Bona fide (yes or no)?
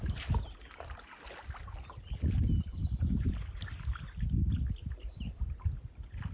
yes